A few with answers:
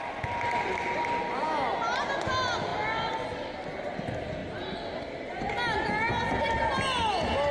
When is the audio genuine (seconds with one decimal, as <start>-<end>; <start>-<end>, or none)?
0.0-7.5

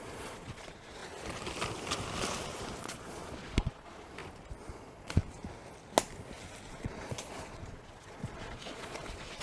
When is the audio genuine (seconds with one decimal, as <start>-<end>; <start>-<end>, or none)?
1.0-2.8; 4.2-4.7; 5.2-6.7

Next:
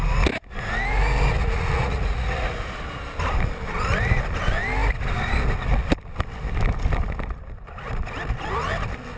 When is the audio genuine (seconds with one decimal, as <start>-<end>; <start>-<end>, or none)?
0.0-1.4; 2.6-9.2

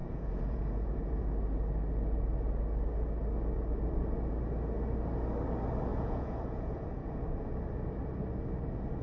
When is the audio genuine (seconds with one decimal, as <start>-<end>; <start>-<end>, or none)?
1.2-5.9; 7.2-9.0